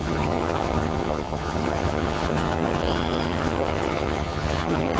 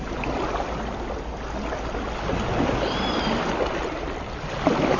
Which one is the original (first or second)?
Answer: second